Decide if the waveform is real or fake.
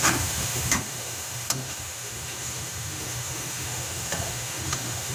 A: fake